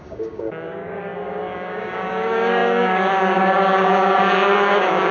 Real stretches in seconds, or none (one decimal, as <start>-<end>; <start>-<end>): none